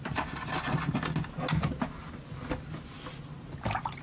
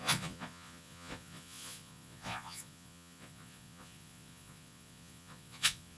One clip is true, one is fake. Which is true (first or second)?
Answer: first